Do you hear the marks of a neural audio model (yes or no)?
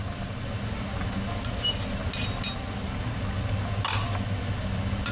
no